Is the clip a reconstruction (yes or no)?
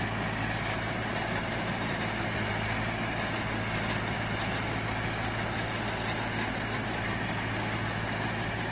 no